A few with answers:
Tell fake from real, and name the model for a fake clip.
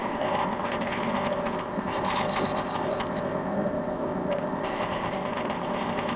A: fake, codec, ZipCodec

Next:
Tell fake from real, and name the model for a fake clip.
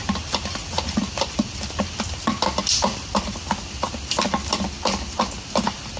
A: real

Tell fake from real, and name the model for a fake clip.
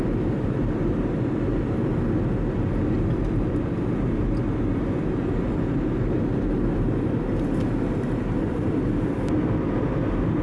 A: real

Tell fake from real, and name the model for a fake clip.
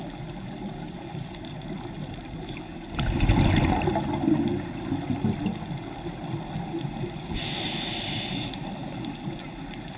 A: real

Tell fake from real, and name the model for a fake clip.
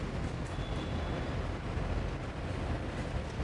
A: real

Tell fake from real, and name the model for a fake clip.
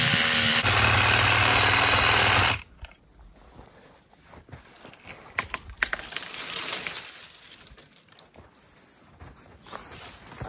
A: real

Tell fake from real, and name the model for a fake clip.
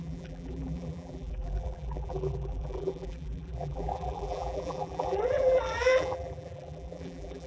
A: fake, vocoder, BigVGAN v2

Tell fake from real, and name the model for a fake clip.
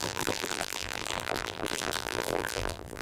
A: fake, vocoder, BigVGAN v2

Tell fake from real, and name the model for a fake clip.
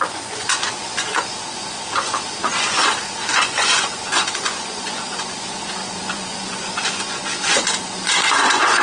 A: fake, vocoder, Vocos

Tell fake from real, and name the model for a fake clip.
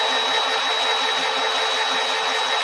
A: real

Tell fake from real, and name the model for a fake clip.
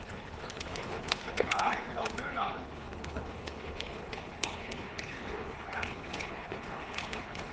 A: fake, codec, HILCodec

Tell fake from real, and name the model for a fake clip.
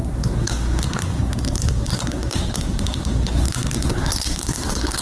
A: fake, codec, SNAC